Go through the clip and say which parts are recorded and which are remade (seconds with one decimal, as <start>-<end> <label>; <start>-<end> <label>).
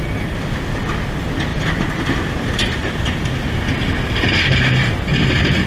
0.0-5.7 recorded